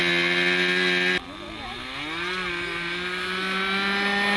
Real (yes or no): yes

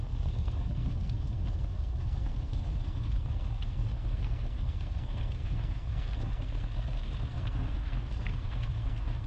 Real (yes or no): no